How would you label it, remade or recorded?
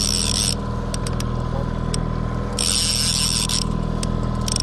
recorded